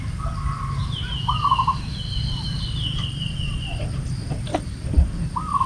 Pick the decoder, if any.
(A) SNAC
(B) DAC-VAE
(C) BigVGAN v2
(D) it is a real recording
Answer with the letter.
D